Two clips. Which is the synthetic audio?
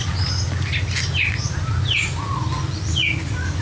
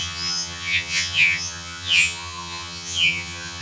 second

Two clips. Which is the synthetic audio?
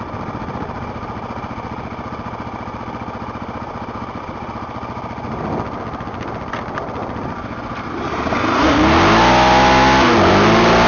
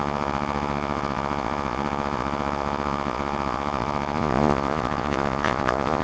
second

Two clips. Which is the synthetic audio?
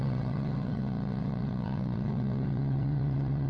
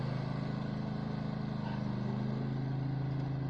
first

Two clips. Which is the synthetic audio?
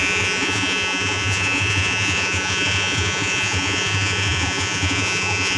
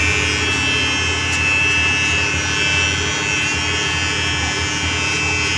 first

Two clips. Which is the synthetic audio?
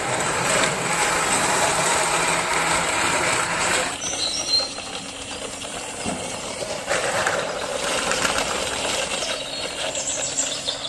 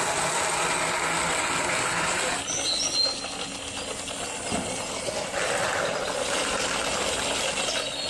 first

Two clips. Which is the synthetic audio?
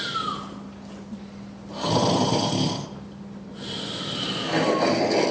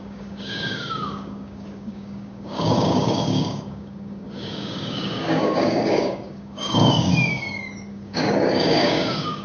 second